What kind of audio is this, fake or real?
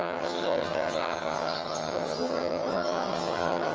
fake